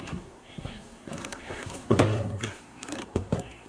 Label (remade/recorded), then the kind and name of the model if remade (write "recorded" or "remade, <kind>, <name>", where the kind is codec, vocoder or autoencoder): remade, codec, SNAC